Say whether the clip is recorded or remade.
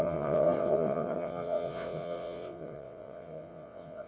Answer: remade